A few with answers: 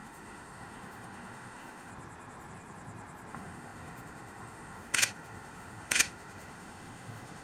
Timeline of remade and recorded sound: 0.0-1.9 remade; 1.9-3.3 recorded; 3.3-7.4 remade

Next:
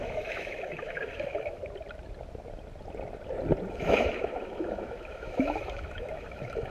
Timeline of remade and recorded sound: 0.0-1.6 remade; 1.6-3.7 recorded; 3.7-6.7 remade

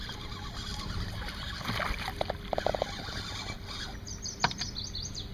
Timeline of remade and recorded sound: 0.0-5.3 recorded

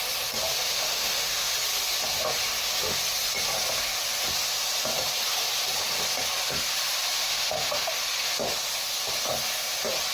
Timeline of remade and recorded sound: 0.0-0.7 recorded; 0.7-1.5 remade; 1.5-7.2 recorded; 7.2-7.9 remade; 7.9-10.1 recorded

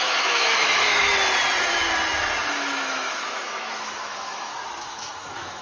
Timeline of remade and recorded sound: 0.0-1.1 remade; 1.1-2.4 recorded; 2.4-5.6 remade

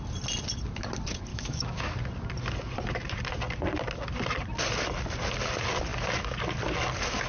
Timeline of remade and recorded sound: 0.0-1.3 recorded; 1.3-1.9 remade; 1.9-7.3 recorded

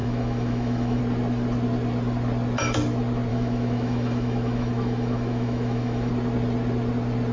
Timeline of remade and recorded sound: 0.0-1.0 remade; 1.0-3.3 recorded; 3.3-6.1 remade; 6.1-7.3 recorded

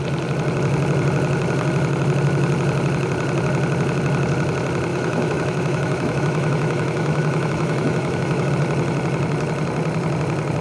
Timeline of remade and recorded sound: 0.0-4.9 recorded; 4.9-8.5 remade; 8.5-10.6 recorded